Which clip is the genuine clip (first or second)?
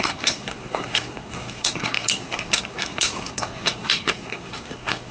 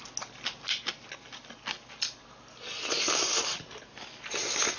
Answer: second